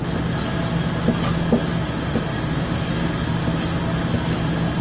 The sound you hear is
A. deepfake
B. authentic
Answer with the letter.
B